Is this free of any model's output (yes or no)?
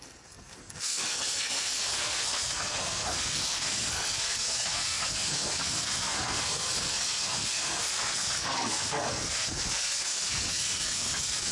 no